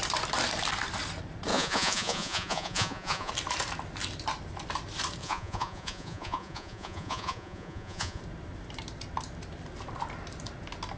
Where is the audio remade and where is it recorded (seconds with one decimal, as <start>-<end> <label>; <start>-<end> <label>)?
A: 0.0-1.5 recorded; 1.5-3.3 remade; 3.3-5.2 recorded; 5.2-8.2 remade; 8.2-11.0 recorded